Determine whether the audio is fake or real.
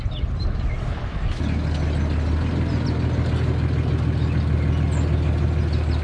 real